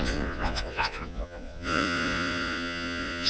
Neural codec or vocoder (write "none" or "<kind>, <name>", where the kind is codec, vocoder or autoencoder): vocoder, Vocos